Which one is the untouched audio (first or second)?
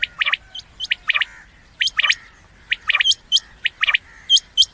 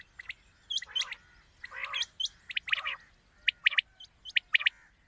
second